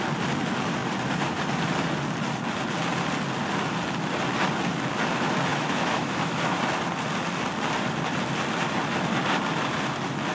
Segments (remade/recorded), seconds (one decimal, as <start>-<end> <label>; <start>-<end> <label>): 0.0-5.5 recorded; 5.5-6.6 remade; 6.6-10.3 recorded